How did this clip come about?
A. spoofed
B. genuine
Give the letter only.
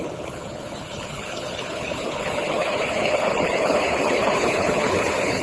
A